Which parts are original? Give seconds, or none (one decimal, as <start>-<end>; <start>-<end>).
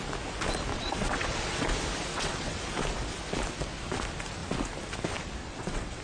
0.0-0.7; 1.7-2.1; 2.6-5.4